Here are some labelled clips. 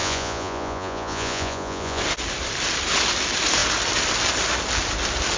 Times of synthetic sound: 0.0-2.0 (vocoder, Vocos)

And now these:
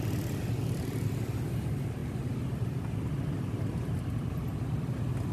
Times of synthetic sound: none

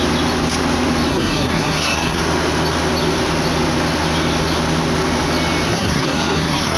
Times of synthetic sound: 1.1-2.2 (codec, SNAC); 5.7-6.8

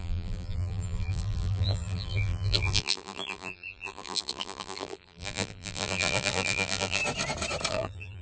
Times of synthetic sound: 0.0-7.0 (vocoder, BigVGAN v2); 7.7-8.2

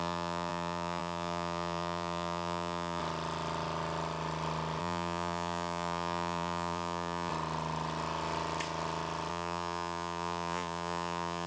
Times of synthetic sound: 0.0-3.0 (vocoder, Vocos); 4.8-7.3; 9.3-11.5

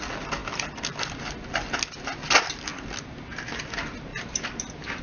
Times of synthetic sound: 0.4-1.2 (vocoder, BigVGAN v2); 4.1-5.0

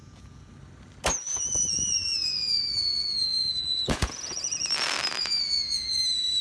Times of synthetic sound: 0.0-0.5 (vocoder, Vocos); 1.3-4.7; 5.2-6.0

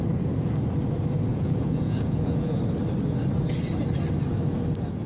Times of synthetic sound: 1.3-2.6 (vocoder, Vocos)